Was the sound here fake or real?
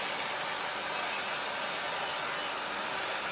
fake